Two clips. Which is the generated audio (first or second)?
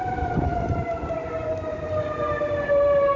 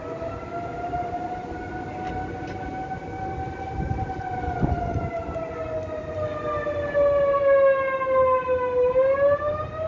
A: first